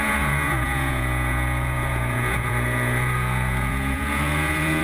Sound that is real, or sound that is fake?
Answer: fake